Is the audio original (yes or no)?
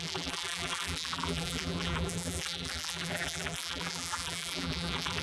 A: no